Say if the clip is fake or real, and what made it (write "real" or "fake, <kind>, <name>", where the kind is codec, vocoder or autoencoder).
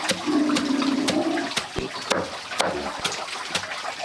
real